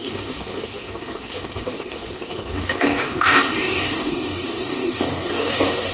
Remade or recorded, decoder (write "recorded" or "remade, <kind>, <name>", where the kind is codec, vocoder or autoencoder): remade, codec, DAC